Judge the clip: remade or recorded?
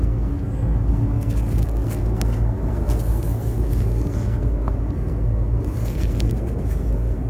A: remade